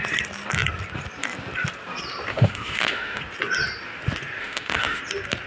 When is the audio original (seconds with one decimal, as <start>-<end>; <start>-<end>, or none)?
0.0-2.3; 3.2-4.4; 5.0-5.5

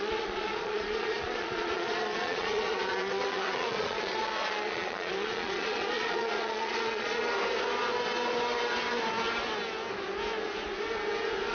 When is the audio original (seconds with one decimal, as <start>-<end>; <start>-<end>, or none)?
7.2-11.5